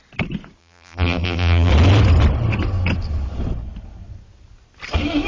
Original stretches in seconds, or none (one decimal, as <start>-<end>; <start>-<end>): 0.0-0.6; 1.7-5.3